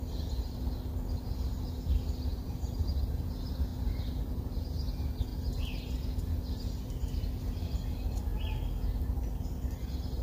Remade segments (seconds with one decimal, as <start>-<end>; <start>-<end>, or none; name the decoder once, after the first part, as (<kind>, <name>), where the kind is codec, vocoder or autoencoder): 2.3-3.0 (vocoder, BigVGAN v2); 3.7-4.2